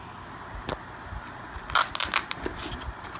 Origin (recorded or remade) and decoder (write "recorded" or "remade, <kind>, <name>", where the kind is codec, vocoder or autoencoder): recorded